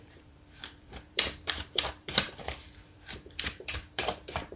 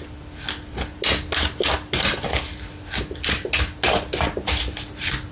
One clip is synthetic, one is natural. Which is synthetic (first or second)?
first